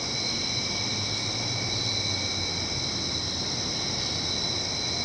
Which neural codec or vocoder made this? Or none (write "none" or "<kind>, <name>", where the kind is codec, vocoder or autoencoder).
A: none